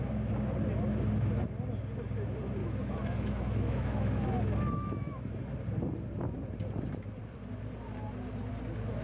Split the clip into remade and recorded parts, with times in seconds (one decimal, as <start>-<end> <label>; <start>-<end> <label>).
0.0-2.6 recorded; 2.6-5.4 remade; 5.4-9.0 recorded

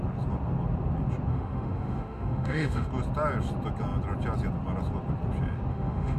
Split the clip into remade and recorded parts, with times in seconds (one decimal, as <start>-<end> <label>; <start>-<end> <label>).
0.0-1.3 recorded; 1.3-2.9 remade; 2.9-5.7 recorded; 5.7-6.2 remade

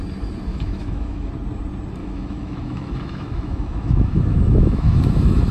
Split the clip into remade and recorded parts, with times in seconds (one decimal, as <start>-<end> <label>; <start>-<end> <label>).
0.0-0.5 recorded; 0.5-1.3 remade; 1.3-2.0 recorded; 2.0-5.5 remade